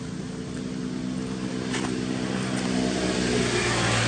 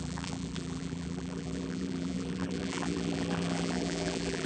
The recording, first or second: first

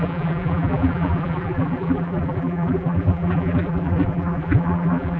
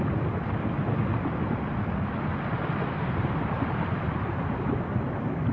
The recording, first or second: second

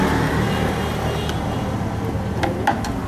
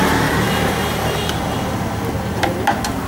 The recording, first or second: first